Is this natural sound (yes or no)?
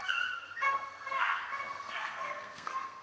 no